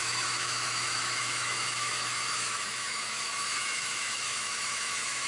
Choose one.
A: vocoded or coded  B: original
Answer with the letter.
A